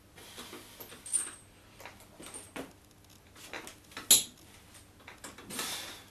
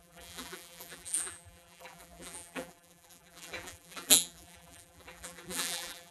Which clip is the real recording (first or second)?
first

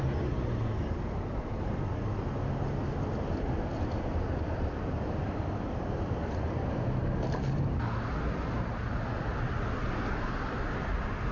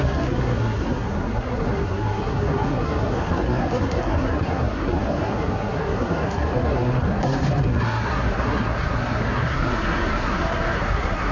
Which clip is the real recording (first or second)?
first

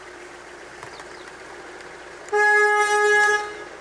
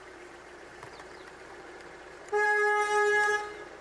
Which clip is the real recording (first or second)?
first